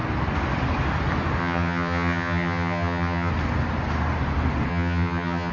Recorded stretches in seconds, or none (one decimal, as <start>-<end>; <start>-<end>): 0.0-1.4; 3.3-4.7